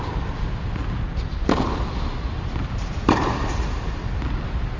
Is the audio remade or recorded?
recorded